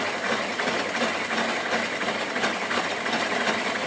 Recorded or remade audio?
recorded